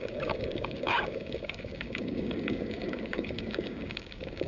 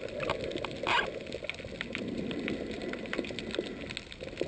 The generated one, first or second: first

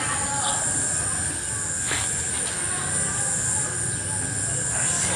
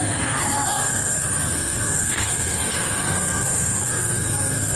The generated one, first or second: second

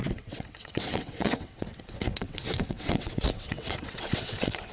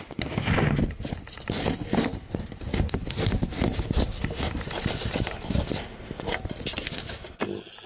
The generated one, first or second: first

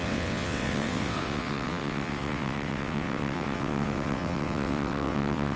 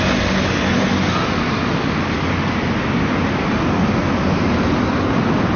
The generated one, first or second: first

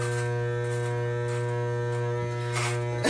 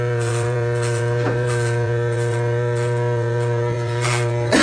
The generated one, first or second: second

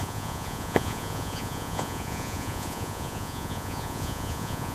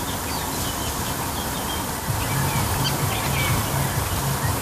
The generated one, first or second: first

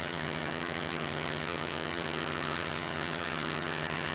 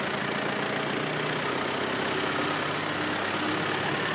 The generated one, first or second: first